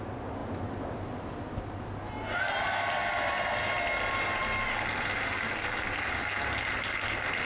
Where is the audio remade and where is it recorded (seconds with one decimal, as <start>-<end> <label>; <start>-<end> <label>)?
0.0-7.5 recorded